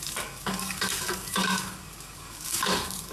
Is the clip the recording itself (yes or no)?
no